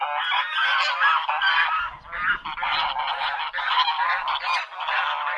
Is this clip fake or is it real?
real